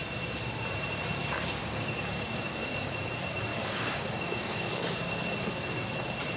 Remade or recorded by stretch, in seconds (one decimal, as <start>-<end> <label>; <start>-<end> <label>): 0.0-1.6 recorded; 1.6-2.9 remade; 2.9-3.5 recorded; 3.5-5.2 remade; 5.2-6.4 recorded